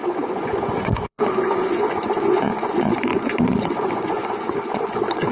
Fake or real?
fake